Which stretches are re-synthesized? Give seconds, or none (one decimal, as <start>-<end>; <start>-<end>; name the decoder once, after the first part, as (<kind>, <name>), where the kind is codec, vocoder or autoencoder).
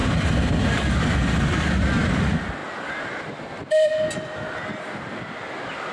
none